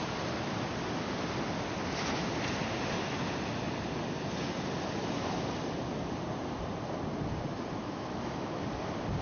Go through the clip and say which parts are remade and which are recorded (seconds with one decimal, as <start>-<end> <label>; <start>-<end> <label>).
0.0-7.8 recorded; 7.8-8.6 remade; 8.6-9.2 recorded